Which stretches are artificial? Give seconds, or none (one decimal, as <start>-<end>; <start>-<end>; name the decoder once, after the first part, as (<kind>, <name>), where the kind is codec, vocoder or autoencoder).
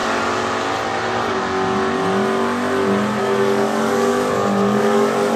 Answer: 3.2-5.4 (codec, DAC)